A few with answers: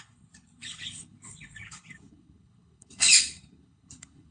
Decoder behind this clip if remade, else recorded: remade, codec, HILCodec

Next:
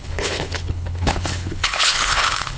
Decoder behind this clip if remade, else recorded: remade, codec, HILCodec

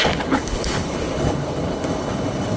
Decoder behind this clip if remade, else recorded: remade, codec, HILCodec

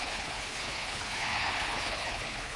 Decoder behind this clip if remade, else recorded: remade, codec, HILCodec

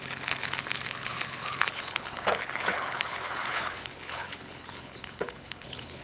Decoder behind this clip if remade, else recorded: remade, codec, HILCodec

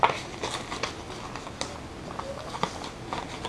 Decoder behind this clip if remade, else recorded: recorded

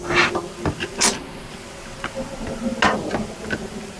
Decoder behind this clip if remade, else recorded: recorded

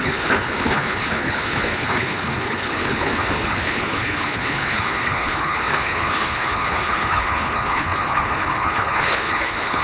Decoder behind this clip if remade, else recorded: remade, codec, HILCodec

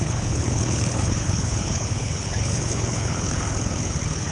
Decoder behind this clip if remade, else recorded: remade, codec, HILCodec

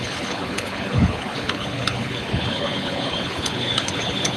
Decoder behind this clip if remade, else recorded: remade, codec, HILCodec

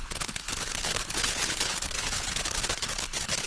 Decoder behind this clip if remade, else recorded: remade, codec, HILCodec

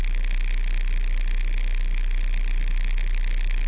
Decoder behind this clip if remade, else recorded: recorded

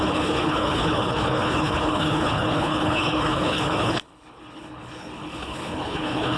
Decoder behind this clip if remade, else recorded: remade, codec, HILCodec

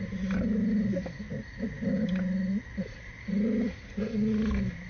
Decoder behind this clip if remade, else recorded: recorded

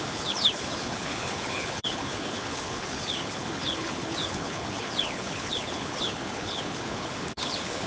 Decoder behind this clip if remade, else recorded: remade, codec, HILCodec